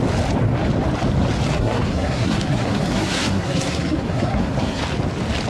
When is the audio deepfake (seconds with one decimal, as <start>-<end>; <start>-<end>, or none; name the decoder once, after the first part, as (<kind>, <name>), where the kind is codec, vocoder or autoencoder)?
1.5-4.8 (codec, SNAC)